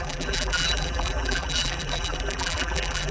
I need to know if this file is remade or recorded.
remade